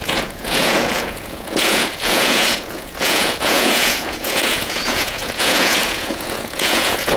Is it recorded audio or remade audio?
remade